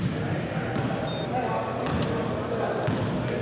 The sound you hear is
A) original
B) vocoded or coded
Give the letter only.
A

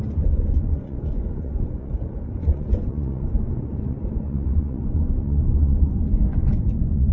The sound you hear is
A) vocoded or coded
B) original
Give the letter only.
A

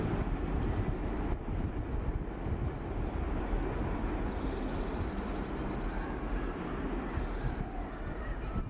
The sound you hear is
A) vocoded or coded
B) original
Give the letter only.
B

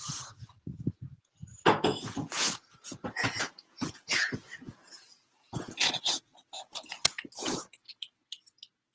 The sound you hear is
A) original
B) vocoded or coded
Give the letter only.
B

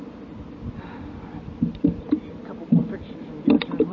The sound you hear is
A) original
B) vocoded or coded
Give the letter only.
A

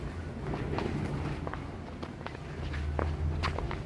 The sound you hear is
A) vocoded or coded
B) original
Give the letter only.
B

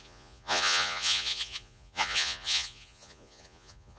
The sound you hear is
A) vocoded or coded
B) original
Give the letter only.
A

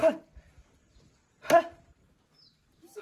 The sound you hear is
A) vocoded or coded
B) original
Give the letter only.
B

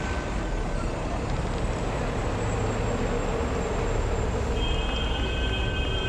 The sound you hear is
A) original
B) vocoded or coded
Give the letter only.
A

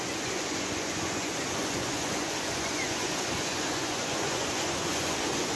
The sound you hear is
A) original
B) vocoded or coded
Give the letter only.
B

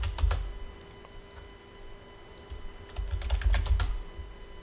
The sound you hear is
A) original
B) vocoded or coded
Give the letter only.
A